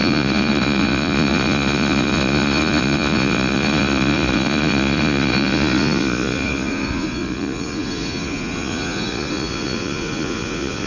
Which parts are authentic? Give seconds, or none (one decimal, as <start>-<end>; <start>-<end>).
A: none

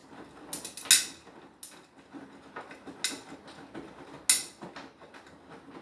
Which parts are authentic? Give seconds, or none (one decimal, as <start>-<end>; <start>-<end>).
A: 0.0-5.8

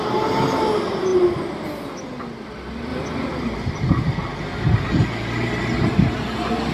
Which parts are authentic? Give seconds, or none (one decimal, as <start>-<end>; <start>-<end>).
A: 0.0-6.7